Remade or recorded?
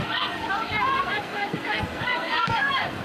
remade